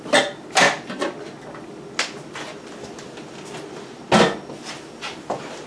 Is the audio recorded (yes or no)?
yes